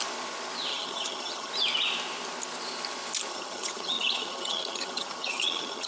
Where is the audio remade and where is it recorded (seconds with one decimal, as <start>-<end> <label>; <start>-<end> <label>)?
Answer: 0.0-0.7 recorded; 0.7-1.5 remade; 1.5-3.3 recorded; 3.3-5.9 remade